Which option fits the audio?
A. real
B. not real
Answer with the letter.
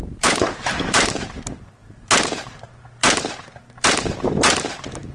B